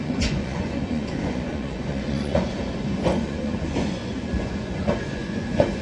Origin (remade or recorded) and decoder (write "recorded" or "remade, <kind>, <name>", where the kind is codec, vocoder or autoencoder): remade, vocoder, Vocos